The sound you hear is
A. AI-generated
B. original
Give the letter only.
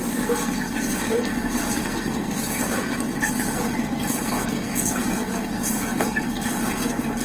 A